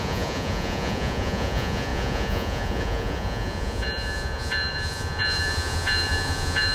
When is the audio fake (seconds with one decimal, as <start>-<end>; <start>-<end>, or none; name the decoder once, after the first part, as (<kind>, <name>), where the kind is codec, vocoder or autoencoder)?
0.0-6.7 (vocoder, Vocos)